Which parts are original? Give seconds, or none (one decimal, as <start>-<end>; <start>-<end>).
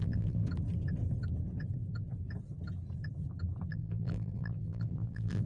0.4-3.7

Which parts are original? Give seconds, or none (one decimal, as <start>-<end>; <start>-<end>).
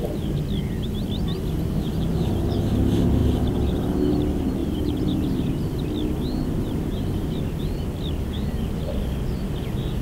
0.0-4.6; 5.4-10.0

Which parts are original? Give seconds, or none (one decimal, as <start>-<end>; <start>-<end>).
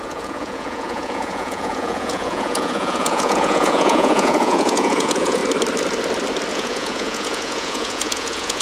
5.4-6.5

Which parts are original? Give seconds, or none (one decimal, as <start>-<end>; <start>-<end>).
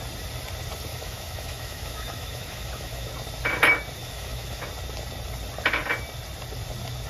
0.0-0.9; 3.1-4.0; 4.7-7.1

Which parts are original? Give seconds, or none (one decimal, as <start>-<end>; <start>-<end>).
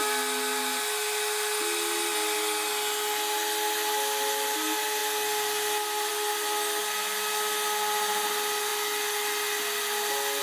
0.0-10.4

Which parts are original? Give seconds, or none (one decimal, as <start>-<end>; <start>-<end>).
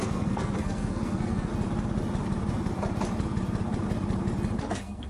1.5-4.6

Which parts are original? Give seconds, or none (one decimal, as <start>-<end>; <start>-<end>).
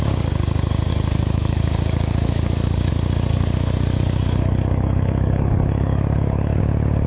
0.0-0.9; 2.9-3.3; 6.6-7.1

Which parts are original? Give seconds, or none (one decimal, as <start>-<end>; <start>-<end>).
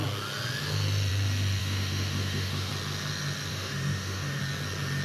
0.0-1.6; 2.7-3.5; 4.4-5.0